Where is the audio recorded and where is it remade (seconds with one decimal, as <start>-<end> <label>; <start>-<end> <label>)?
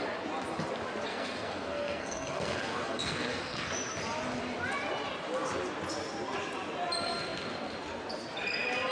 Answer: 0.0-1.1 recorded; 1.1-3.7 remade; 3.7-8.9 recorded